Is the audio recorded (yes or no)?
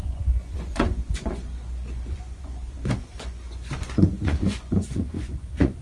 no